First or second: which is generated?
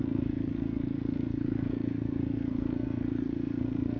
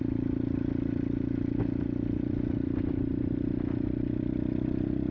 first